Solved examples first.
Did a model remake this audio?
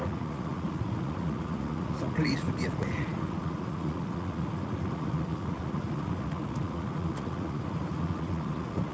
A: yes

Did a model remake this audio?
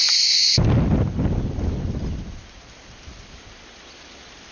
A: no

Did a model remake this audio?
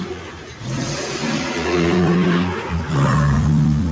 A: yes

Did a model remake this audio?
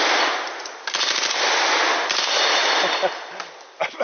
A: no